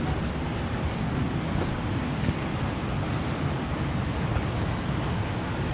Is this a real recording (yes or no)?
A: yes